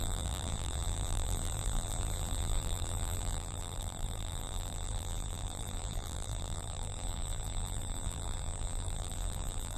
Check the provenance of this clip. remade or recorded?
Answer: remade